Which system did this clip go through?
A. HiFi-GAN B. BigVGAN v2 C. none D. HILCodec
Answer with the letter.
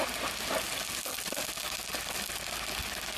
C